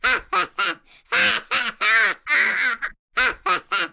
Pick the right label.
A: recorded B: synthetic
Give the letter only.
A